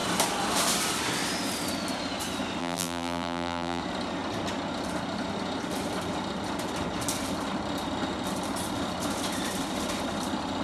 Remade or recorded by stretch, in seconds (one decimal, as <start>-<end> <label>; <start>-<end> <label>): 0.0-2.6 recorded; 2.6-3.8 remade; 3.8-10.6 recorded